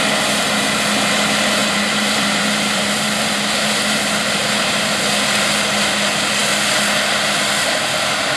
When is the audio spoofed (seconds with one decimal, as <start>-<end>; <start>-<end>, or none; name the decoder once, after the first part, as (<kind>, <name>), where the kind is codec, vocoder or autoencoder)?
1.6-5.0 (vocoder, BigVGAN v2)